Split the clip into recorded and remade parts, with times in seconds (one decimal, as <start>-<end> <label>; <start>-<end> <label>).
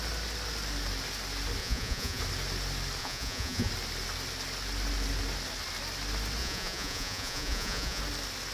0.0-1.6 recorded; 1.6-2.2 remade; 2.2-3.0 recorded; 3.0-3.7 remade; 3.7-6.4 recorded; 6.4-8.0 remade; 8.0-8.5 recorded